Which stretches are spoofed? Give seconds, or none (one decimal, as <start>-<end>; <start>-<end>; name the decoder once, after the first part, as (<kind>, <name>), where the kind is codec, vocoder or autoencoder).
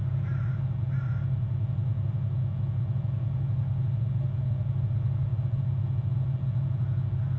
none